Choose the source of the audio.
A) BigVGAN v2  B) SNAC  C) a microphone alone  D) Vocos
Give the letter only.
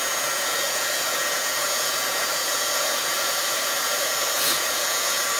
D